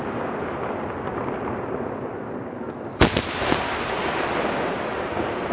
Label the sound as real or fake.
real